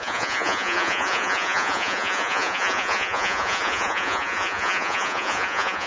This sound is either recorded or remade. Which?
remade